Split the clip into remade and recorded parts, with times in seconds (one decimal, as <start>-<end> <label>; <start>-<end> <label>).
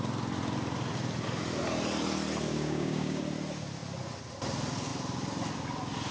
0.0-2.5 recorded; 2.5-3.2 remade; 3.2-6.1 recorded